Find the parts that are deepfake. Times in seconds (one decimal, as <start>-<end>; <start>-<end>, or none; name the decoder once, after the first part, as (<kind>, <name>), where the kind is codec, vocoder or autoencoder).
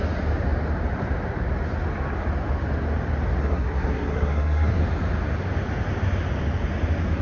3.4-4.8 (codec, SNAC)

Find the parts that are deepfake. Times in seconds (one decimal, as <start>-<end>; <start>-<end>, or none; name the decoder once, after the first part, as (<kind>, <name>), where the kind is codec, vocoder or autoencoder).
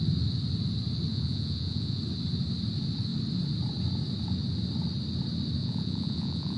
1.1-2.0 (vocoder, Vocos); 5.6-6.6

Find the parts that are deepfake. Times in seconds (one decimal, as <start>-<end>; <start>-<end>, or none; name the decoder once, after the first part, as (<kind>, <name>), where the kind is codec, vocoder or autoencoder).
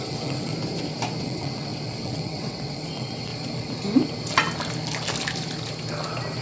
0.0-0.5 (vocoder, WaveNeXt); 1.2-3.3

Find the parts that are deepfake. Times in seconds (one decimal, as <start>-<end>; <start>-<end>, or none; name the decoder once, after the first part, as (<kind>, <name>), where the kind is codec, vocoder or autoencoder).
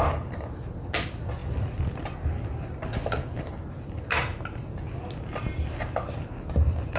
none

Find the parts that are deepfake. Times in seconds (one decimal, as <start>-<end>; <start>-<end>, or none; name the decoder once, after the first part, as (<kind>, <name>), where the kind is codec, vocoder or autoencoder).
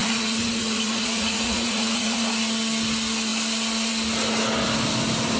0.0-2.3 (vocoder, Vocos)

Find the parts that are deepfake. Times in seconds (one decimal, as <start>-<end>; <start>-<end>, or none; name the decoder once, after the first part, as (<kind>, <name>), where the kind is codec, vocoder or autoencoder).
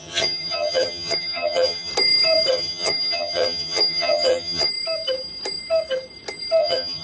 0.0-1.9 (vocoder, HiFi-GAN); 2.5-4.7; 6.6-7.0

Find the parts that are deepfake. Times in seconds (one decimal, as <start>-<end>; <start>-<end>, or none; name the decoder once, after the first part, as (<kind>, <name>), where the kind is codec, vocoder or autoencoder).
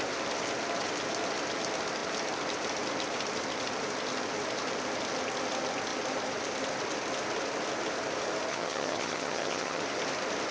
8.5-9.8 (vocoder, HiFi-GAN)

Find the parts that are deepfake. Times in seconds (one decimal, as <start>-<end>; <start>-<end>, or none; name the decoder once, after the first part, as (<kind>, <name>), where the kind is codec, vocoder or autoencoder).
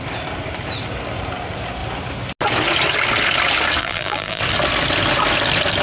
3.8-4.4 (vocoder, BigVGAN v2)